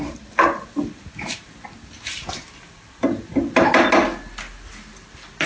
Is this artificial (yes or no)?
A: no